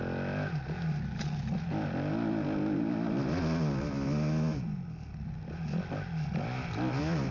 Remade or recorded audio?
recorded